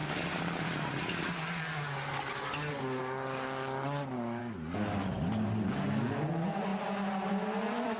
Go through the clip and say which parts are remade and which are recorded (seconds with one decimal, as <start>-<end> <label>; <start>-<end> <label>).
0.0-8.0 recorded